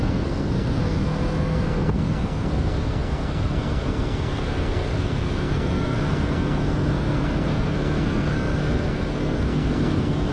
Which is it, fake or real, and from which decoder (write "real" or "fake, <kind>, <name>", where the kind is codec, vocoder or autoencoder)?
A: fake, codec, SNAC